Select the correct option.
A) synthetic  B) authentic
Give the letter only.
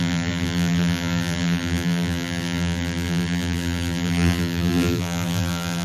A